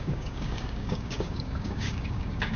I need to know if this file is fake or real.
fake